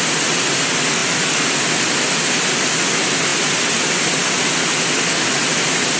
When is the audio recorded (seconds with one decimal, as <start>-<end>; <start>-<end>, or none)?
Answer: 0.0-6.0